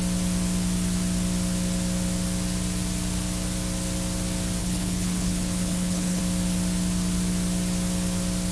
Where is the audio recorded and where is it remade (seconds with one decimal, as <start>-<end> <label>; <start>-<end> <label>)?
0.0-4.6 recorded; 4.6-6.2 remade; 6.2-8.5 recorded